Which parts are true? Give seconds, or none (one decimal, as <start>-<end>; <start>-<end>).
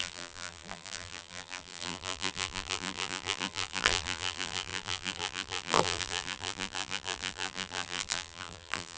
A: none